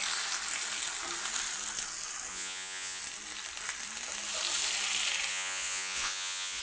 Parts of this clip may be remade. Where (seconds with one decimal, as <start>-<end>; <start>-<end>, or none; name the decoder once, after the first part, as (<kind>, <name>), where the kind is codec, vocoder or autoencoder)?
2.3-3.0 (vocoder, Vocos); 5.3-6.6